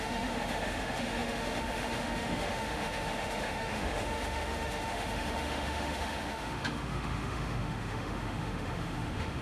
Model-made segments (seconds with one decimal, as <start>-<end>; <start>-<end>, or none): 0.0-9.4